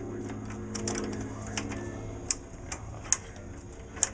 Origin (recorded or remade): recorded